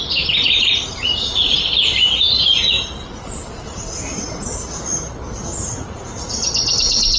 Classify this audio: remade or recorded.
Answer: recorded